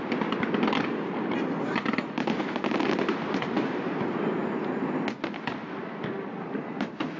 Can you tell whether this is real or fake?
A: real